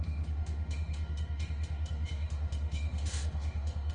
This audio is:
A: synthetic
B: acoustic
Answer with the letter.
A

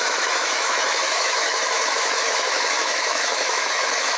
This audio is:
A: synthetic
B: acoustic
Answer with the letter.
A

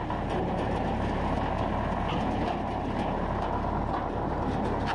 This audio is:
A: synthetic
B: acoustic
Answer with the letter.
B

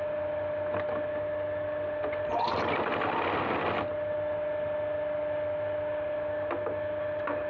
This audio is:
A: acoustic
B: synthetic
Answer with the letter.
A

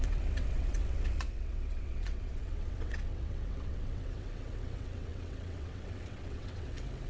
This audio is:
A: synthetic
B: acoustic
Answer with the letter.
A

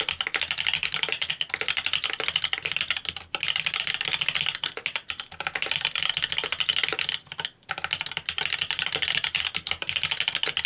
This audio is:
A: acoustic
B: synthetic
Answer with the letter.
A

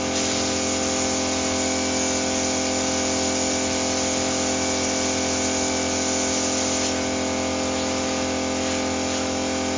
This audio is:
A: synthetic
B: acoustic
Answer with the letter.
B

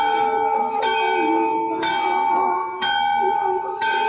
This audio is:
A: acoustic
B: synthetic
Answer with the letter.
B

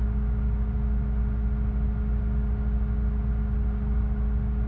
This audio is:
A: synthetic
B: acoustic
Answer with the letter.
B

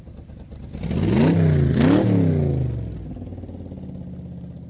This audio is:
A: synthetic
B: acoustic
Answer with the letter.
B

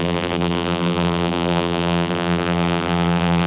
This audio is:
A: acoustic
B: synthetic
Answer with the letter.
B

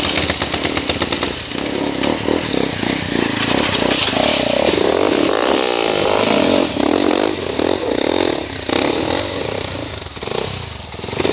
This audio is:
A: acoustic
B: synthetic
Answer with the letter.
A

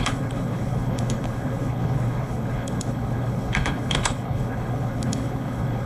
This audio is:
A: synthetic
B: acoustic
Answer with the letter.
A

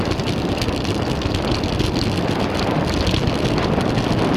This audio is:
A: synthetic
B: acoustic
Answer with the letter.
B